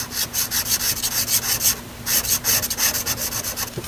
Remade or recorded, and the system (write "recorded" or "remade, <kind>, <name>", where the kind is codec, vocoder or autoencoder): recorded